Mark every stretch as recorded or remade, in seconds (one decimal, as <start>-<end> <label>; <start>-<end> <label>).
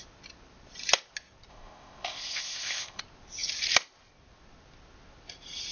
0.0-1.5 recorded; 1.5-3.0 remade; 3.0-5.7 recorded